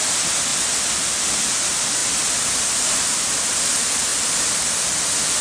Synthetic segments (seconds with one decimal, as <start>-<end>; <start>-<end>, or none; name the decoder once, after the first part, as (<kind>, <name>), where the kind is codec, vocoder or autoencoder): none